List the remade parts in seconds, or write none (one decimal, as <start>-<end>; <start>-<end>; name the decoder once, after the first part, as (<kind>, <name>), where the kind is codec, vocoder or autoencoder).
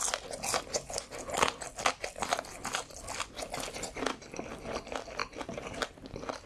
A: none